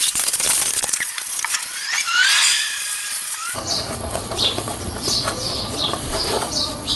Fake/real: fake